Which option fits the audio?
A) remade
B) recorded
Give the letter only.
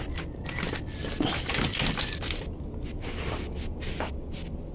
B